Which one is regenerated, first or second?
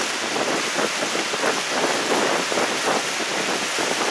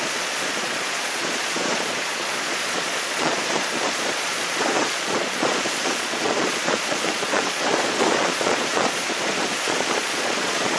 second